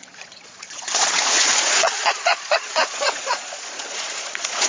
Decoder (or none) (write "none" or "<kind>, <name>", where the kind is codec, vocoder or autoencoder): vocoder, Vocos